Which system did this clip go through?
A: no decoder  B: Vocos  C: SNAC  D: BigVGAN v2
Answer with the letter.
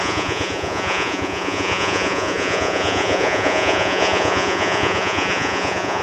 B